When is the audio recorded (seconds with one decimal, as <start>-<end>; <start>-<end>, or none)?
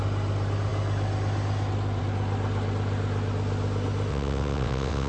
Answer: 0.0-4.1